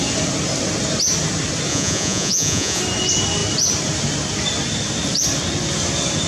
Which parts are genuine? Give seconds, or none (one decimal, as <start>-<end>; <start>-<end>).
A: 0.0-1.7; 2.8-6.3